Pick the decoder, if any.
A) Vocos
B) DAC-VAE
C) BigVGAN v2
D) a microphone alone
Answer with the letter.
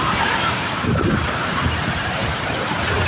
C